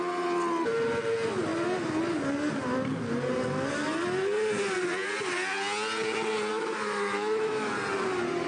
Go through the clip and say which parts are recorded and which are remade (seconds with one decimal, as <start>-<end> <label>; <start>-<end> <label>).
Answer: 0.0-6.5 recorded; 6.5-7.7 remade; 7.7-8.5 recorded